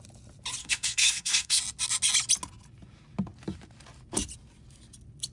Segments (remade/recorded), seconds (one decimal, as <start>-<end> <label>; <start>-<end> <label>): 0.0-0.6 recorded; 0.6-1.6 remade; 1.6-5.3 recorded